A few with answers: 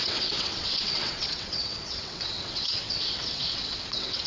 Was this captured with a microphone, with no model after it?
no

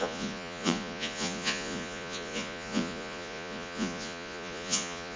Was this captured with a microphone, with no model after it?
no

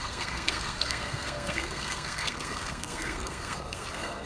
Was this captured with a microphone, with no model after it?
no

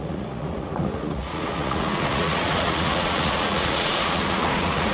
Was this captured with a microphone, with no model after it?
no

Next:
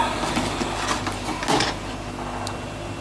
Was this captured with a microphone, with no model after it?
yes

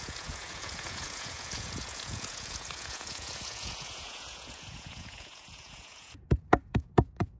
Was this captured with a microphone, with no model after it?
no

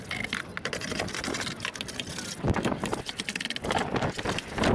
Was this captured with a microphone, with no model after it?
yes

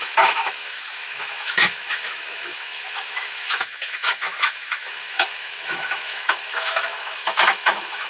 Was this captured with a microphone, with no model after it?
no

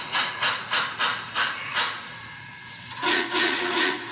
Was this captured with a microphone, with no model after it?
no